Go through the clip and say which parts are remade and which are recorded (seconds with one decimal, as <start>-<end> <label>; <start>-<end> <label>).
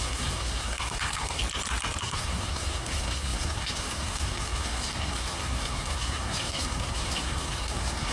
0.0-1.4 remade; 1.4-2.0 recorded; 2.0-8.1 remade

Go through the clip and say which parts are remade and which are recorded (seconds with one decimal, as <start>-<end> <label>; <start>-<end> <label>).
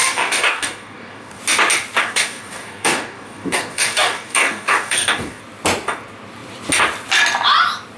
0.0-1.4 remade; 1.4-2.0 recorded; 2.0-5.4 remade; 5.4-8.0 recorded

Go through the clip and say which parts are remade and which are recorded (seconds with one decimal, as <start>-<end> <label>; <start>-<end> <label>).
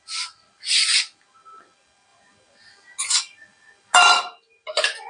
0.0-5.1 recorded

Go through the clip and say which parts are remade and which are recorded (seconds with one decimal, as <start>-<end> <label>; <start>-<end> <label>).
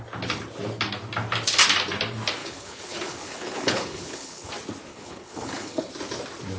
0.0-2.4 recorded; 2.4-4.5 remade; 4.5-4.9 recorded; 4.9-5.9 remade; 5.9-6.6 recorded